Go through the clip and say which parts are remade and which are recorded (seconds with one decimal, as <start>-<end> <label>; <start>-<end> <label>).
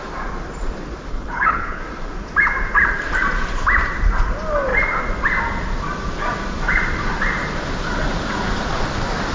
0.0-1.1 recorded; 1.1-1.8 remade; 1.8-9.3 recorded